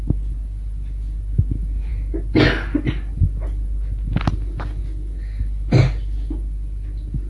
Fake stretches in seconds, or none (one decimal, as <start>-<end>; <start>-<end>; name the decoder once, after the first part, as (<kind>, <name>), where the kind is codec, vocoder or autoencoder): none